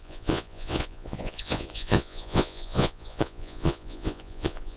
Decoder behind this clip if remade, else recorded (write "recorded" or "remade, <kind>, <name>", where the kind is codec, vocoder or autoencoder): remade, vocoder, Vocos